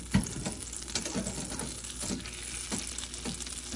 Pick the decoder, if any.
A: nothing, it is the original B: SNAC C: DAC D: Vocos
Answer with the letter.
A